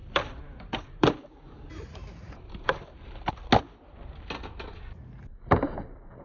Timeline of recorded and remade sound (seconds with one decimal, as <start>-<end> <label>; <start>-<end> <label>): 0.0-3.3 remade; 3.3-5.2 recorded; 5.2-6.2 remade